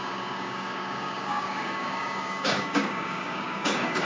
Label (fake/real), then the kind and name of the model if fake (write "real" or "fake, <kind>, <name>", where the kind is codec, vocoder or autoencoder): fake, codec, DAC